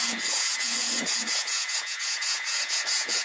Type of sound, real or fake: fake